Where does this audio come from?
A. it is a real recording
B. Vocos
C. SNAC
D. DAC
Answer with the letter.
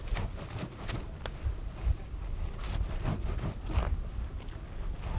A